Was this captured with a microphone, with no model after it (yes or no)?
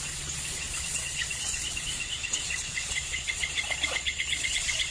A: no